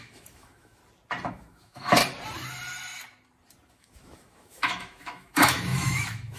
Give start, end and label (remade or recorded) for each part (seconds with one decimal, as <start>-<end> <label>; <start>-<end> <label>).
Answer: 0.0-0.8 remade; 0.8-1.3 recorded; 1.3-2.0 remade; 2.0-3.7 recorded; 3.7-6.4 remade